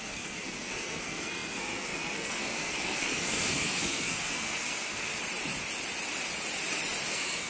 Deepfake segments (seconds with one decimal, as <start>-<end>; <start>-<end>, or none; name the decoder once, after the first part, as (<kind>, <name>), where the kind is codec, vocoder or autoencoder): 0.0-5.1 (codec, SNAC); 7.1-7.5